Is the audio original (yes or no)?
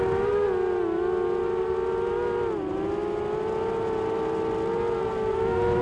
yes